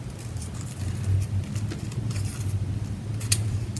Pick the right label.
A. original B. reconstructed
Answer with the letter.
A